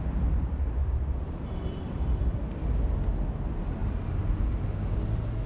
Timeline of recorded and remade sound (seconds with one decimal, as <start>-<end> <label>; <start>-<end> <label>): 0.0-0.8 recorded; 0.8-2.2 remade; 2.2-5.5 recorded